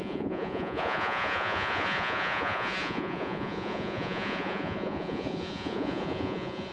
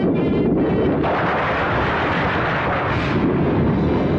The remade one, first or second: first